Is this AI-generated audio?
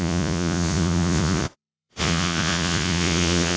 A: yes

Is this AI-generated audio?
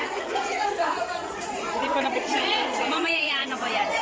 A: yes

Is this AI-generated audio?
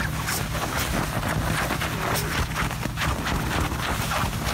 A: no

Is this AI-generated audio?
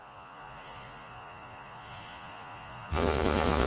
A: yes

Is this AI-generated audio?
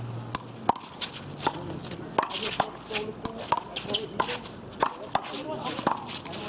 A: no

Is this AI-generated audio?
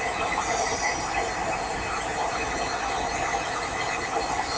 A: no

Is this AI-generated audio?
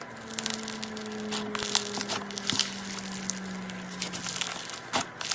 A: no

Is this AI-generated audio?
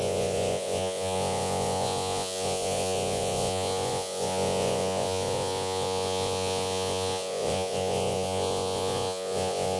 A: yes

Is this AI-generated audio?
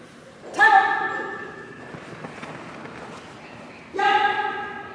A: no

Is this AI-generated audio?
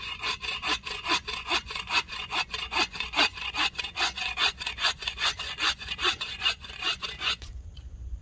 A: yes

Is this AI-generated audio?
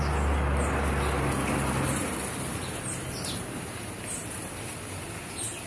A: no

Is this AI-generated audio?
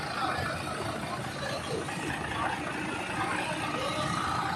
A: no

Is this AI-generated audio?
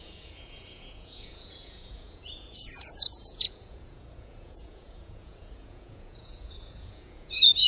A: yes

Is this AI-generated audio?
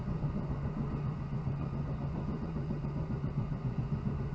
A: yes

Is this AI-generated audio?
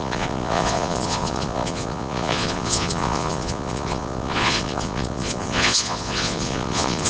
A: yes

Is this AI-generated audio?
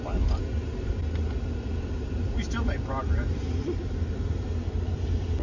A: no